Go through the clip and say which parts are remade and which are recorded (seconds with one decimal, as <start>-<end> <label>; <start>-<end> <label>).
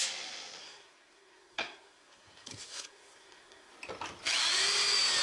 0.0-0.6 recorded; 0.6-3.7 remade; 3.7-5.2 recorded